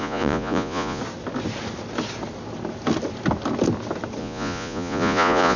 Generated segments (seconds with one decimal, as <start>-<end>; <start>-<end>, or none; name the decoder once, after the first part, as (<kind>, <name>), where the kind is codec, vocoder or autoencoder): 0.0-1.0 (vocoder, Vocos); 4.2-5.6